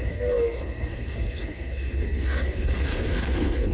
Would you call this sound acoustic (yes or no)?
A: no